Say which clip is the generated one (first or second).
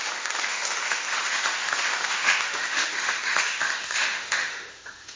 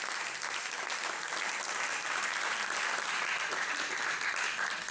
first